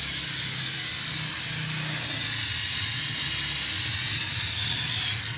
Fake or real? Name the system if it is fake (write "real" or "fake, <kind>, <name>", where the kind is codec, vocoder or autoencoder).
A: real